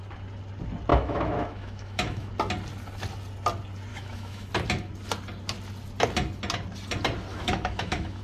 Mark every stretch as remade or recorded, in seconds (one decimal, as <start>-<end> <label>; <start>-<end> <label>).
0.0-0.9 recorded; 0.9-2.3 remade; 2.3-3.9 recorded; 3.9-4.5 remade; 4.5-7.3 recorded; 7.3-8.2 remade